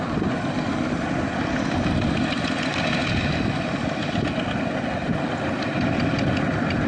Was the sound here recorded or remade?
recorded